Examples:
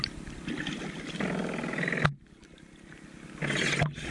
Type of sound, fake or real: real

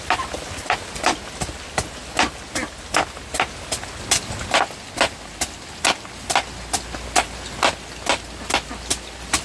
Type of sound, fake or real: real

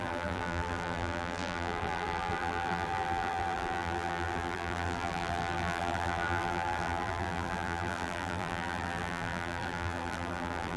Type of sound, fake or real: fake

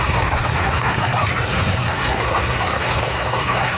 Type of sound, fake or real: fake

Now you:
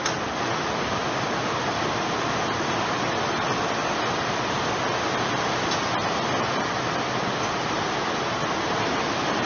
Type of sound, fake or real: real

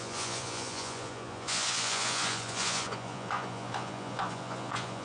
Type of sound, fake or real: fake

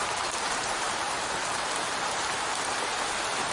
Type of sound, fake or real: fake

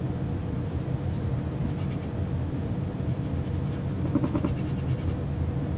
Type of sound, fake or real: fake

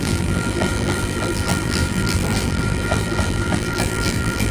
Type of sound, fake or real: fake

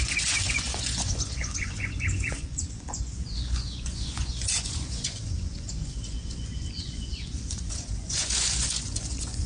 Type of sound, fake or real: fake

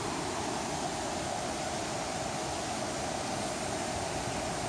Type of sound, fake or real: real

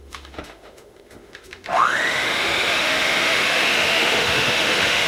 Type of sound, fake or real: fake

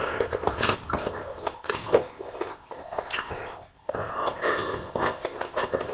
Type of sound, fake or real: fake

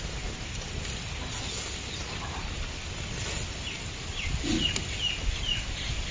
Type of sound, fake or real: real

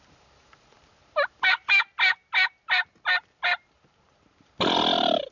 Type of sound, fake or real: real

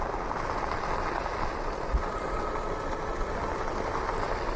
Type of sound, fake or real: real